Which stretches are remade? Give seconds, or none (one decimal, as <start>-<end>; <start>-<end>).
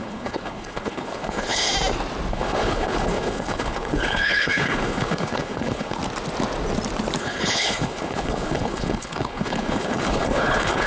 0.0-1.7; 2.3-6.0; 7.2-10.9